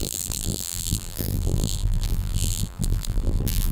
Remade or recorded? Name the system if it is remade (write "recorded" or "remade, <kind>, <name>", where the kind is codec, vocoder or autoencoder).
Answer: remade, vocoder, BigVGAN v2